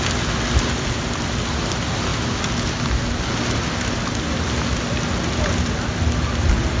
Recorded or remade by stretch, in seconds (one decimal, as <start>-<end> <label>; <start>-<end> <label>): 0.0-6.8 recorded